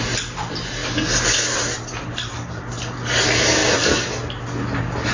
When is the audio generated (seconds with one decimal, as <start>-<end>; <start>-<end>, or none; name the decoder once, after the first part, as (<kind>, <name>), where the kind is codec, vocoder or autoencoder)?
none